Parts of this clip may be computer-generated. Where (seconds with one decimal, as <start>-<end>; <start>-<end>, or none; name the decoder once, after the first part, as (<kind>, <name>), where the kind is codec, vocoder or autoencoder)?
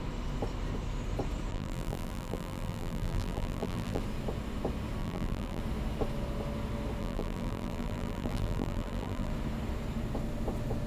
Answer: 1.5-4.0 (vocoder, BigVGAN v2); 5.0-5.6; 7.0-9.3